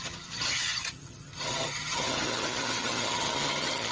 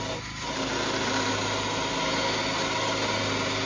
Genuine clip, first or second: second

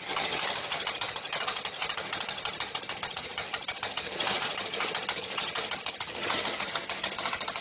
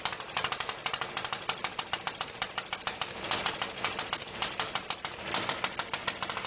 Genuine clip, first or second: second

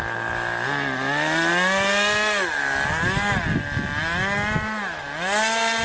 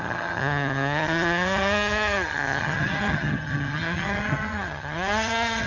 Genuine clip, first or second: first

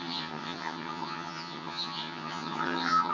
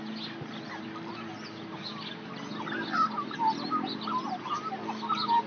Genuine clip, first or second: second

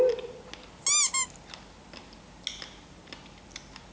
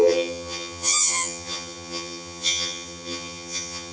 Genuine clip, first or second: first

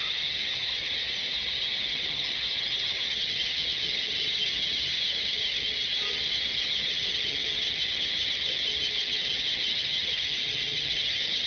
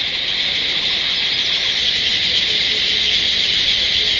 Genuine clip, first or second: second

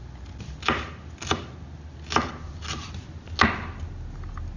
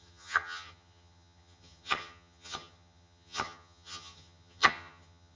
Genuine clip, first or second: first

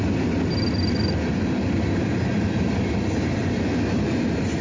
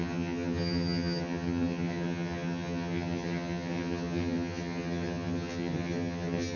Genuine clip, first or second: first